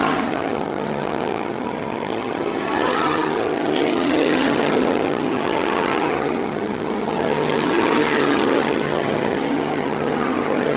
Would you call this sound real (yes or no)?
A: no